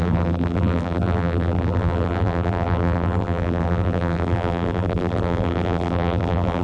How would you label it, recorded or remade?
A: remade